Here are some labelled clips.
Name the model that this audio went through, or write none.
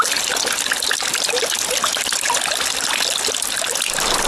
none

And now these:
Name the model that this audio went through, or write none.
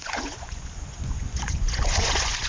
vocoder, Vocos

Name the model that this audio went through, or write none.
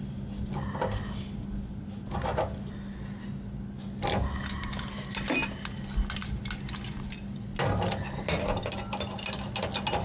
none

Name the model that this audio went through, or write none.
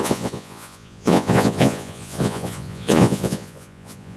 vocoder, Vocos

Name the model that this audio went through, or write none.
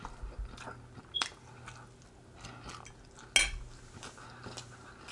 none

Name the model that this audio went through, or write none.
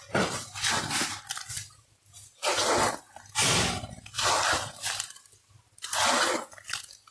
none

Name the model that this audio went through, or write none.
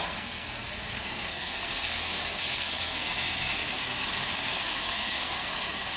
codec, SNAC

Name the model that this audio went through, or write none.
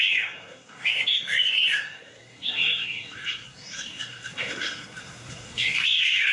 codec, SNAC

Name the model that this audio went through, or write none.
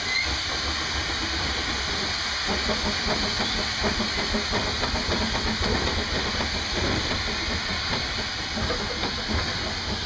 none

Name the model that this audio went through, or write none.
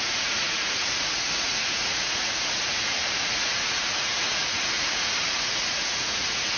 vocoder, Vocos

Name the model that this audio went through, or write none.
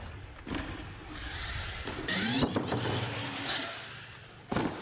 none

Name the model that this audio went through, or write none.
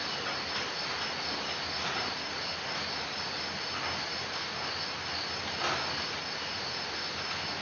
none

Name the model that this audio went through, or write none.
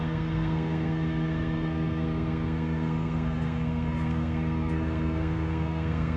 codec, SNAC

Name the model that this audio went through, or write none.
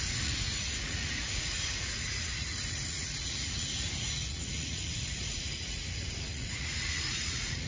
vocoder, Vocos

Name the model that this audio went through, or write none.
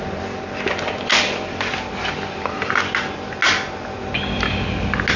none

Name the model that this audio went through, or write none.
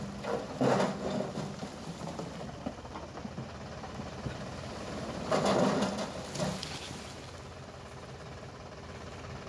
none